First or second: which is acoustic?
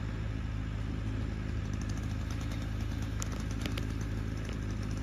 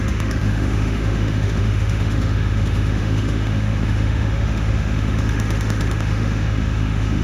first